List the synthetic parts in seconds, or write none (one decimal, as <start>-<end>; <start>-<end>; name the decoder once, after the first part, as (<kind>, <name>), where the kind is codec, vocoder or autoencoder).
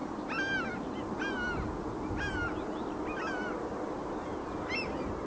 none